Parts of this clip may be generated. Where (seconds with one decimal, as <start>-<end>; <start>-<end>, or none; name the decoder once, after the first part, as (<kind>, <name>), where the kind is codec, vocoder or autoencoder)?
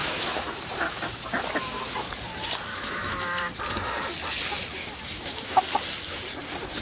0.0-0.6 (autoencoder, DAC-VAE); 2.7-3.5; 4.8-5.6